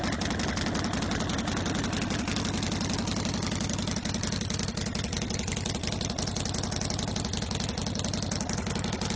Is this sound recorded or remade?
recorded